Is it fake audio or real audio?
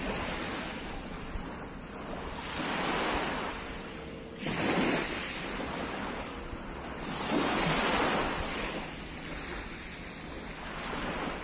real